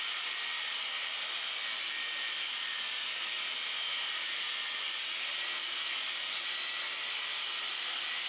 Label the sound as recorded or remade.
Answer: recorded